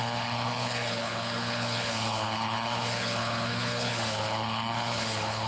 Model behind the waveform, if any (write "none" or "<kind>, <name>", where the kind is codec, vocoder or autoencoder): codec, HILCodec